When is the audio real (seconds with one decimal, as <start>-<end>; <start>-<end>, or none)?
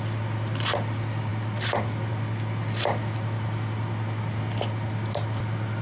0.0-5.8